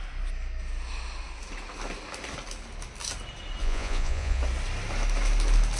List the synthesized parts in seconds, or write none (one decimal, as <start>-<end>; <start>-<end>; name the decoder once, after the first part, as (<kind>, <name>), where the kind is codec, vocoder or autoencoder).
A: 3.6-4.4 (vocoder, Vocos)